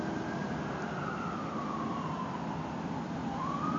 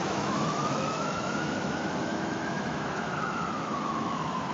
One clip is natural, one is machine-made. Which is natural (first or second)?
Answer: first